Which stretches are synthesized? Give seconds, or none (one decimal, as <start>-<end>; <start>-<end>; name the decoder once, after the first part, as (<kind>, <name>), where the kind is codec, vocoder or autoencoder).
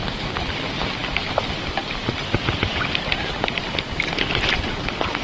none